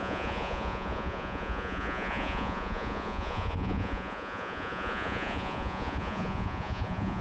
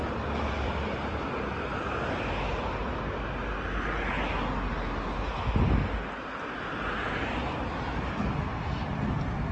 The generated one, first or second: first